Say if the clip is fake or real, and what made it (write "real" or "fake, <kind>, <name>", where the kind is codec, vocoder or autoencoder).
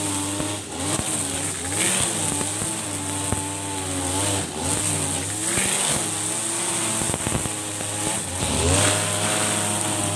real